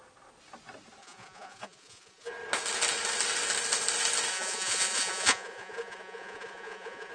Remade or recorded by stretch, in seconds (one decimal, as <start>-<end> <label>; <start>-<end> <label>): 0.0-1.0 recorded; 1.0-2.3 remade; 2.3-4.3 recorded; 4.3-7.1 remade